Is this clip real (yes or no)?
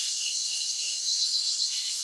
no